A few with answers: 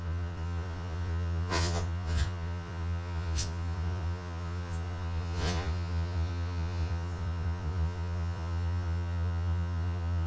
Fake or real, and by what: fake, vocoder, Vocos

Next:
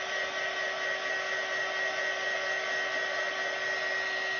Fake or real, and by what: real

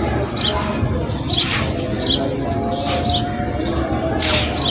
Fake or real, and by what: real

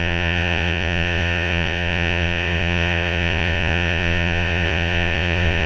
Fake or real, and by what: fake, vocoder, Vocos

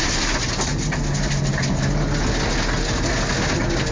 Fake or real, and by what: real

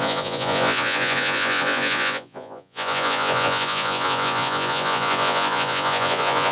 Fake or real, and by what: fake, vocoder, Vocos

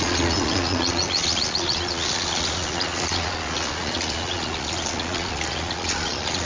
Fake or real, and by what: fake, vocoder, Vocos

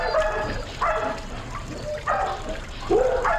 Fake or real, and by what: real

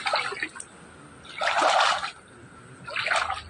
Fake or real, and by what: real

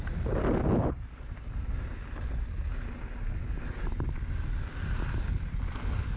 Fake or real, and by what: real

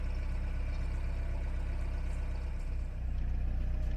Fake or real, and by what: real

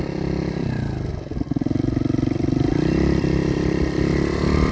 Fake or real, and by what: real